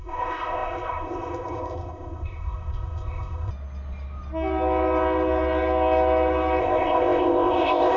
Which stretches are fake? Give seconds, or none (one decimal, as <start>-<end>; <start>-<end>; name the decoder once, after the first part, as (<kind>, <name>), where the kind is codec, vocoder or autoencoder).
0.0-3.5 (codec, ZipCodec); 6.6-8.0